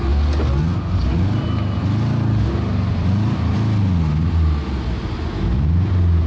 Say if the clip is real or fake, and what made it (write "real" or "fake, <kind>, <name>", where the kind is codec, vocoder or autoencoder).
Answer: real